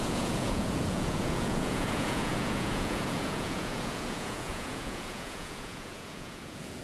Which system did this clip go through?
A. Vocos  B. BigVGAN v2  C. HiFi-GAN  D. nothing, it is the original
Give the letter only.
A